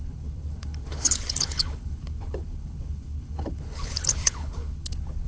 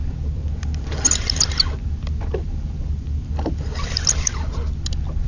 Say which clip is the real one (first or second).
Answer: second